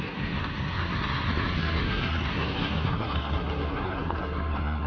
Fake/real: fake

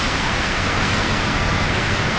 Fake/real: fake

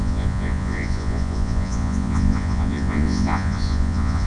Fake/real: fake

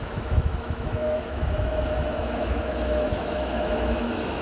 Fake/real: fake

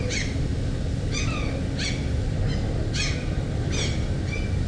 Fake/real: real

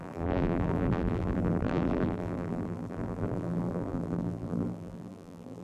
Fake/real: fake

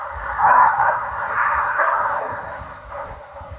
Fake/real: fake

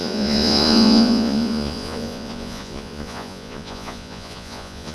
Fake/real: fake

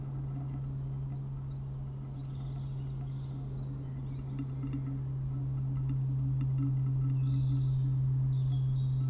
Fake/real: real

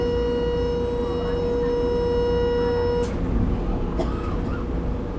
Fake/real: real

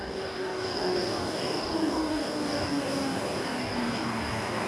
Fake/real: fake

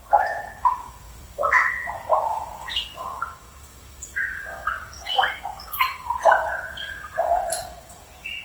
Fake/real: fake